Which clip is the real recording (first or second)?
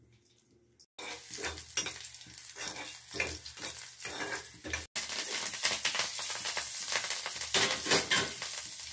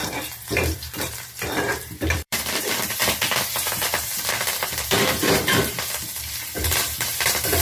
first